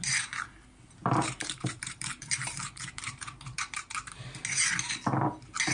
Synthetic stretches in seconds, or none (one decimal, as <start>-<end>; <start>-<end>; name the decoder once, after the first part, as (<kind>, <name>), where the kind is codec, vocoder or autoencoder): 1.0-4.4 (vocoder, BigVGAN v2)